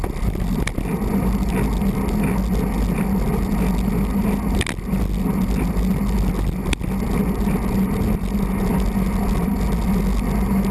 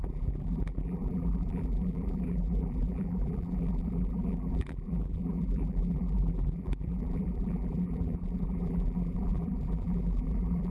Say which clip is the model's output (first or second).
second